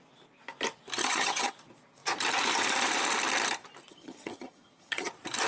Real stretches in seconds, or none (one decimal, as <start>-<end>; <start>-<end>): 0.0-1.0; 1.5-3.9; 5.1-5.5